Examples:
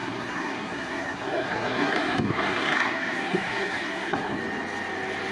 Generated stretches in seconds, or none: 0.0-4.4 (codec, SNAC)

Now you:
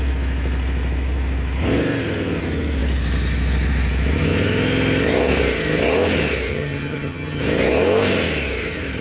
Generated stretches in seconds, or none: 6.5-7.4 (vocoder, HiFi-GAN)

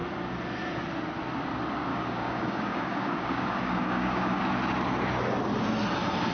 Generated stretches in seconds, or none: 1.9-4.4 (codec, DAC)

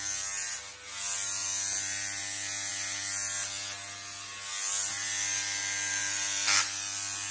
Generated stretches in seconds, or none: none

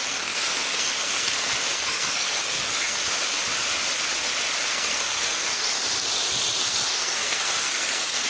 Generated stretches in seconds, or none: 0.0-3.0 (codec, SNAC); 4.7-5.8; 6.6-8.3

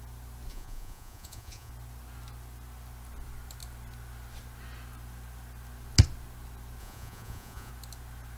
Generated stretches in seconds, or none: 0.5-1.7 (vocoder, Vocos); 6.8-7.7

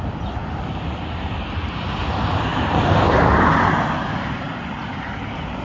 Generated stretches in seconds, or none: none